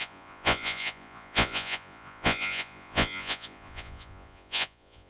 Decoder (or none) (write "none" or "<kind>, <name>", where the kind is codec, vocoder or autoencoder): vocoder, Vocos